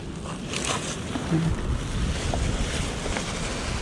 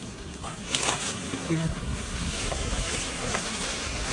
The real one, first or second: first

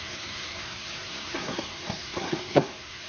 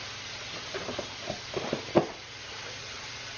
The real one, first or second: second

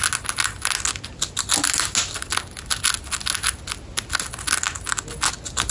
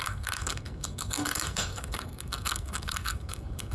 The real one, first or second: first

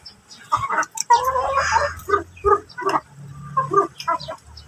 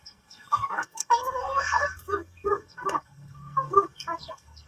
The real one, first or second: first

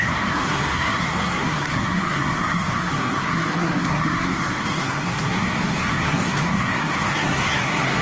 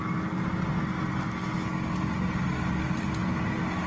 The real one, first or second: second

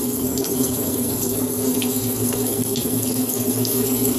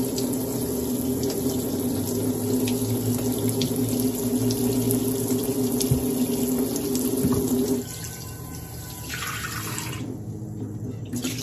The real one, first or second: second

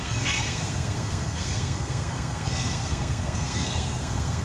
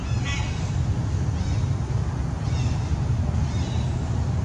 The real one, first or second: second